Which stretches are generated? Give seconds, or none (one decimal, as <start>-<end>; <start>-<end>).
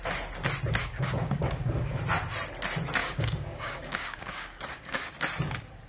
0.8-2.0; 3.0-5.1